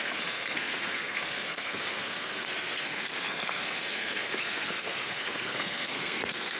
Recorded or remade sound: remade